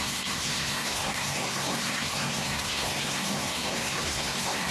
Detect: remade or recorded remade